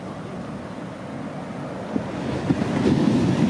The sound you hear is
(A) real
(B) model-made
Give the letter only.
A